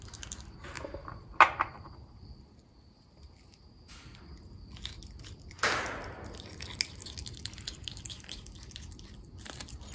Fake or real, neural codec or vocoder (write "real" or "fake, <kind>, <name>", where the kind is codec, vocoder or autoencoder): real